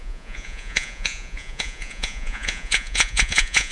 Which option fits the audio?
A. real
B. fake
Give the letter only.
B